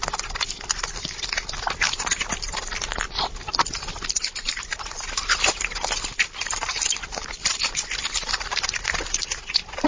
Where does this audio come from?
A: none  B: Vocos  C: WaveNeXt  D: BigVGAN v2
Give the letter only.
A